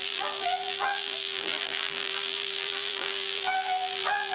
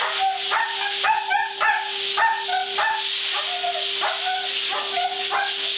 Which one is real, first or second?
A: second